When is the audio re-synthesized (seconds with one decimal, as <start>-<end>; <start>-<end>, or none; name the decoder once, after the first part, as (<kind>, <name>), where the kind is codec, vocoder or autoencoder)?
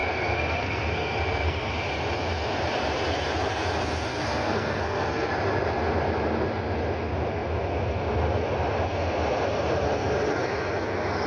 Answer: 0.0-1.7 (codec, SNAC); 4.1-5.3